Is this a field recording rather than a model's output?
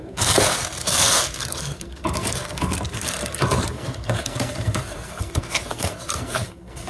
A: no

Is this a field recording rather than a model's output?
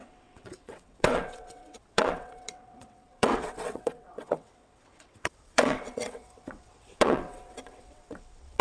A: no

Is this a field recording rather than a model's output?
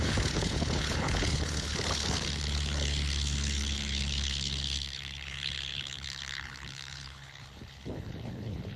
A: no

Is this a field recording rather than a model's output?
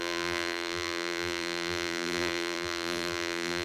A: no